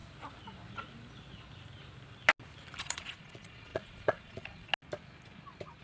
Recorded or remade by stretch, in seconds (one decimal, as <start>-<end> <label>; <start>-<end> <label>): 0.0-2.8 recorded; 2.8-4.7 remade; 4.7-5.8 recorded